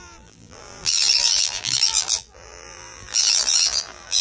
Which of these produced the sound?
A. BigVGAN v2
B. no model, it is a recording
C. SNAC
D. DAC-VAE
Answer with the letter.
A